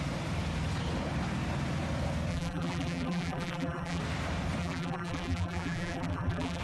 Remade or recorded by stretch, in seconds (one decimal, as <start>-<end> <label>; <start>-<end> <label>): 0.0-2.3 recorded; 2.3-4.0 remade; 4.0-4.6 recorded; 4.6-6.6 remade